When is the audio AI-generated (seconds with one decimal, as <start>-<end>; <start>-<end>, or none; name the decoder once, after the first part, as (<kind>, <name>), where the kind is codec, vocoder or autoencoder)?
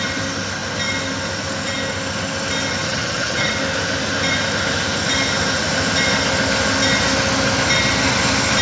2.8-3.5 (vocoder, HiFi-GAN)